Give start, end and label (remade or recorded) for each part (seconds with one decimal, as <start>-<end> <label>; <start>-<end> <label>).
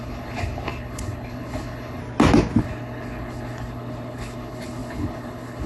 0.0-2.0 remade; 2.0-2.6 recorded; 2.6-5.7 remade